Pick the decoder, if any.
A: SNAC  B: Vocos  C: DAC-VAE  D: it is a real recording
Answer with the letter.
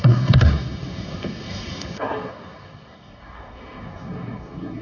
A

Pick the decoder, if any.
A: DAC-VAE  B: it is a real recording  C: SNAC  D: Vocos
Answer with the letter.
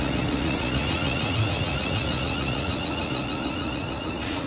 D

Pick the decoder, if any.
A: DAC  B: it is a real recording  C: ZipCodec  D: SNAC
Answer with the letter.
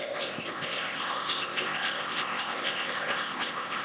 C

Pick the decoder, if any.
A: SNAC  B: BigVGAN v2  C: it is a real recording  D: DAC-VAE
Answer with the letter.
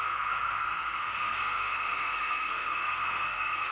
A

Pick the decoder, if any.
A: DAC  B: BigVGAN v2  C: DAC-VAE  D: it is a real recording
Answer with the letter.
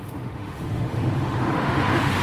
C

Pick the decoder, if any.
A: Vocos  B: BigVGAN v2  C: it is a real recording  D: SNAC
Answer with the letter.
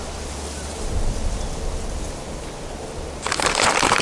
C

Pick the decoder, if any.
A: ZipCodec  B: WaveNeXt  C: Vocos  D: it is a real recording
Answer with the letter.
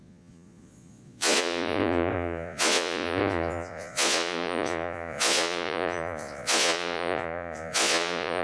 C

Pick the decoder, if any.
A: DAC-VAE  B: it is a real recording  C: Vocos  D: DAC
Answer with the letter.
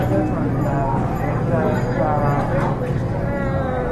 B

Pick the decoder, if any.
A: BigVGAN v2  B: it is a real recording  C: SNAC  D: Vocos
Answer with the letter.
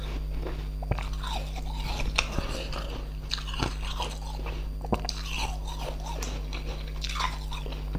B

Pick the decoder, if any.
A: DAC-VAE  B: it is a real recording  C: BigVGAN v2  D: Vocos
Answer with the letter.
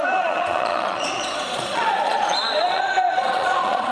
D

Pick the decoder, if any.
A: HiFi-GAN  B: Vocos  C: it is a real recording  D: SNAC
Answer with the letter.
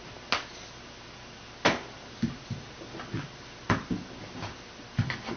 C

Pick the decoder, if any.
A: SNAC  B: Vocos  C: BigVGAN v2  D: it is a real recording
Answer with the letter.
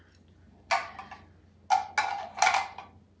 D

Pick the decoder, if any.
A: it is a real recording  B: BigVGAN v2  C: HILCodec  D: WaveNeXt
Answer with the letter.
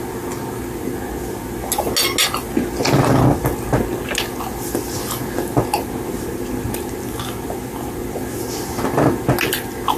A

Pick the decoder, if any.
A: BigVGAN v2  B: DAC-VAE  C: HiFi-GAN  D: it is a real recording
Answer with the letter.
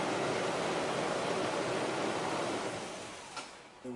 D